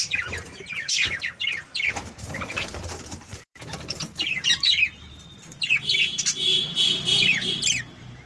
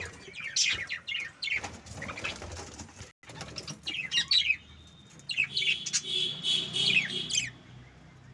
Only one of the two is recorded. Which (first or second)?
second